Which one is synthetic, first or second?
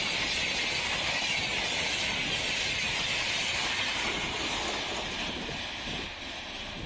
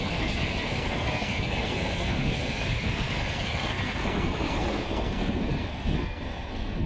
second